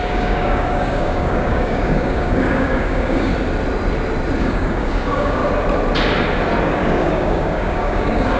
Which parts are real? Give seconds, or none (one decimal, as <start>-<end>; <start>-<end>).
3.3-4.4; 5.4-6.6